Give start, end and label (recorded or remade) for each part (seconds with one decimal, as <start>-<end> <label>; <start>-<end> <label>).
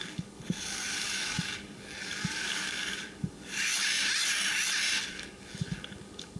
0.0-3.7 remade; 3.7-5.1 recorded; 5.1-6.4 remade